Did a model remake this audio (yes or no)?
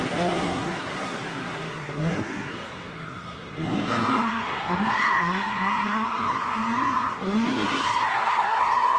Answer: yes